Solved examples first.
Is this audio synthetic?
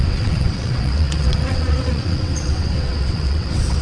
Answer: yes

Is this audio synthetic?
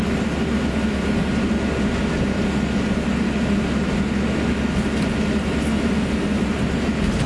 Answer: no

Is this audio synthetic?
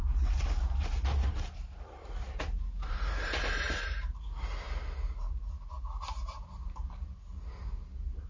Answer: yes